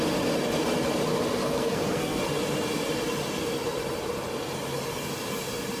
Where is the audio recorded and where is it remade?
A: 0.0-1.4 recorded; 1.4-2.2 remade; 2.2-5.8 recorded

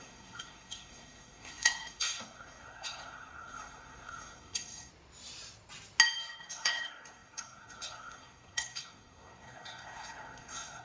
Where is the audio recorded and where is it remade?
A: 0.0-4.9 remade; 4.9-6.4 recorded; 6.4-10.8 remade

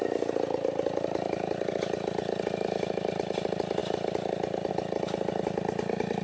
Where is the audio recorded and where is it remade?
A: 0.0-6.2 recorded